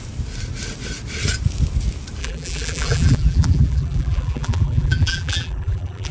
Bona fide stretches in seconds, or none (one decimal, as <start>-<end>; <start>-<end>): 0.0-2.2